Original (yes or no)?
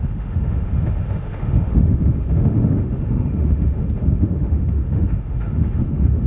no